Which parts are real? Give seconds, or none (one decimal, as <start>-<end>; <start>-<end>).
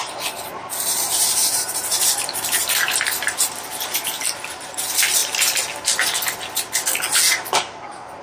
5.2-7.2